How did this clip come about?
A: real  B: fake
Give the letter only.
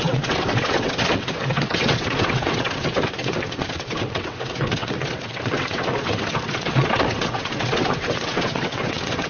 B